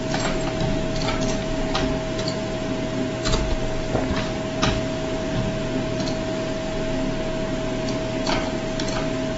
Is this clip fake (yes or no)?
no